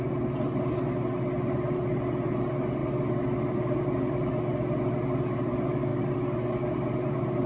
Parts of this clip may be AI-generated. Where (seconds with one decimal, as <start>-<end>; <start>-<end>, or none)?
none